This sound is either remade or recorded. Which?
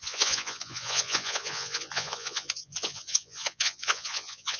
remade